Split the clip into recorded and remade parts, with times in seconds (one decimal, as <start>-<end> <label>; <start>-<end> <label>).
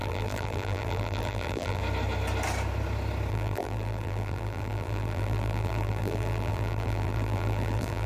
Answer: 0.0-1.8 remade; 1.8-3.3 recorded; 3.3-8.1 remade